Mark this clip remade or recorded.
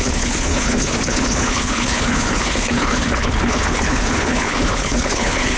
remade